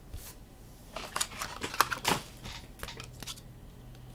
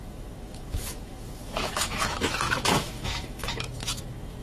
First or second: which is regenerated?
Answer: second